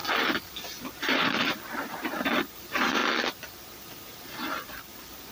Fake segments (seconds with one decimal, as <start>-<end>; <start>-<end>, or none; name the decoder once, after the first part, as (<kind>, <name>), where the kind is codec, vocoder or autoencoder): 0.8-3.0 (vocoder, BigVGAN v2); 3.7-5.3